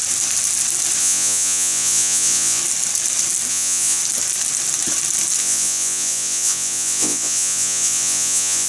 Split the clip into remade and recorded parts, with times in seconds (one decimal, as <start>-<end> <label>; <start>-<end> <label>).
0.0-1.0 recorded; 1.0-2.6 remade; 2.6-3.5 recorded; 3.5-4.0 remade; 4.0-5.4 recorded; 5.4-8.7 remade